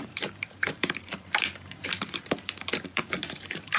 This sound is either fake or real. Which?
fake